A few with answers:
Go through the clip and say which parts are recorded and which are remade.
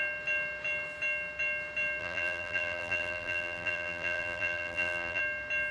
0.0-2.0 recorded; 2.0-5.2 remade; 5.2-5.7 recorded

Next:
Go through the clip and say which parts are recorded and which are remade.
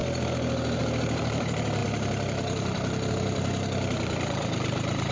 0.0-0.8 recorded; 0.8-5.1 remade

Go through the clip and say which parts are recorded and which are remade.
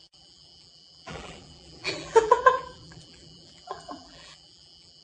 0.0-5.0 remade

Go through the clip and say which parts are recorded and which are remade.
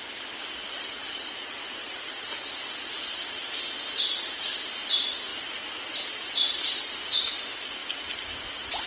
0.0-5.3 remade; 5.3-6.1 recorded; 6.1-8.9 remade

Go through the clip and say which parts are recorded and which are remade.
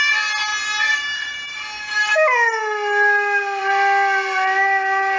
0.0-5.2 recorded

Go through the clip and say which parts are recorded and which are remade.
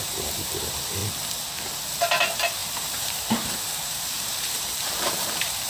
0.0-1.0 remade; 1.0-1.5 recorded; 1.5-5.7 remade